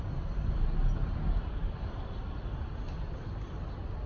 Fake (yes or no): no